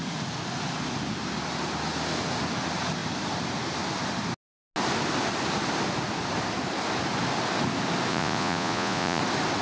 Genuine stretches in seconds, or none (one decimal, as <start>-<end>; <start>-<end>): 0.0-8.1; 9.2-9.6

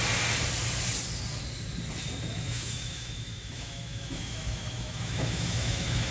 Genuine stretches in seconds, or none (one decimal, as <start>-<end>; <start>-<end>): 0.0-2.3

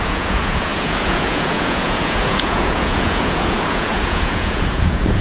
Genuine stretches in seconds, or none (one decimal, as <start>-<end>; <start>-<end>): none

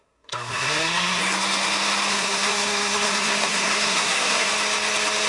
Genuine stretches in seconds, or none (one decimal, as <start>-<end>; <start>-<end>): 1.2-2.1; 4.5-5.3

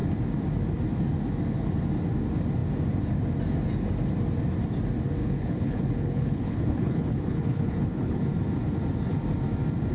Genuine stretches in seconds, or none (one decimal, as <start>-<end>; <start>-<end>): 0.0-5.2; 8.2-9.9

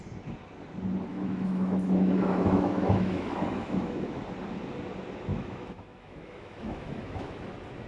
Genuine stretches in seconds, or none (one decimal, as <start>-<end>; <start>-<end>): 0.0-1.1; 4.2-5.3; 7.4-7.9

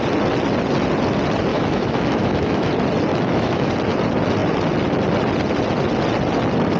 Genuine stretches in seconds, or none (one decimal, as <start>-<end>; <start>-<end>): 0.0-1.5; 2.7-3.1; 3.7-6.8